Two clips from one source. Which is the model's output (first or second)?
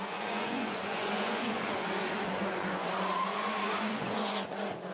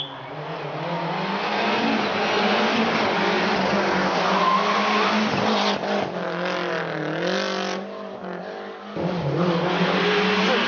first